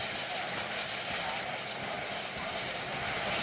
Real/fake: real